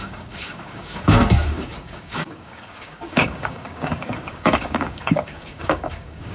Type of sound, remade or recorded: remade